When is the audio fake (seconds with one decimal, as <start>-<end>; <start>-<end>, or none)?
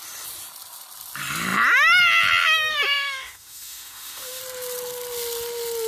2.7-4.4